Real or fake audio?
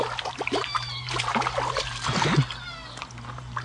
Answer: real